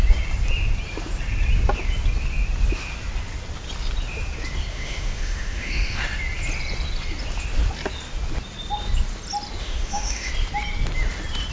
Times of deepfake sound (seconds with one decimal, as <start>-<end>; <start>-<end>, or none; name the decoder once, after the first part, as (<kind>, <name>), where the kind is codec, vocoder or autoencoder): 4.7-6.0 (autoencoder, DAC-VAE); 9.6-10.3